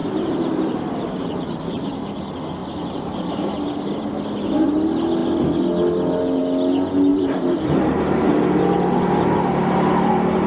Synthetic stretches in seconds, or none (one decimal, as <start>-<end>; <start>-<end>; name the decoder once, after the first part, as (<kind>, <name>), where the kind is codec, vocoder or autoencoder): 0.0-2.2 (vocoder, BigVGAN v2); 2.6-3.2; 7.1-8.3